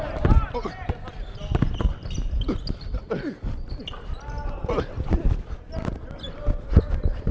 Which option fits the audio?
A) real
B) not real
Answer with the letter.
A